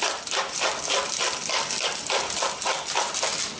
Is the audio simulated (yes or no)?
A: no